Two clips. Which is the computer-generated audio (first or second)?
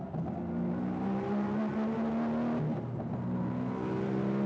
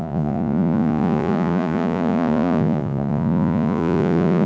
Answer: second